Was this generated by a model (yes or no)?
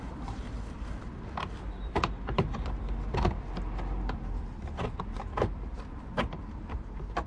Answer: yes